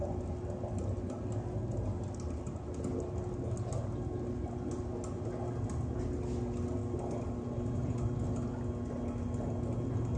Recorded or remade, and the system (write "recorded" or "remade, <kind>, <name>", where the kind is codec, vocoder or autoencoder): recorded